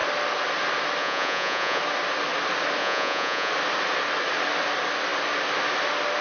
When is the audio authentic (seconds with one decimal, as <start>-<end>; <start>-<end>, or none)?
0.0-1.0; 1.8-2.8; 3.5-6.2